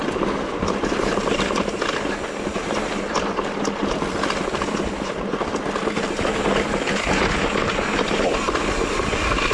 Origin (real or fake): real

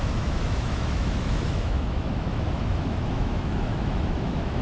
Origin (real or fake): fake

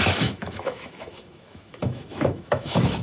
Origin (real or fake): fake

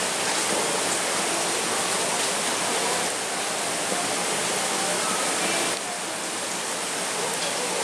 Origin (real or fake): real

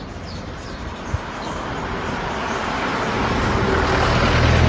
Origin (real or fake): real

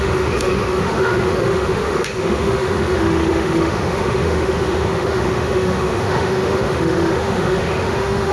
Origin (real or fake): fake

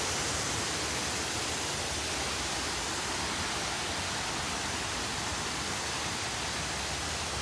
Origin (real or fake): real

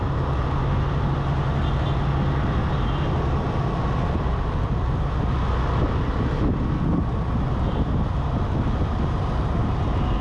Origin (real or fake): real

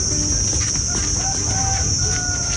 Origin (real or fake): real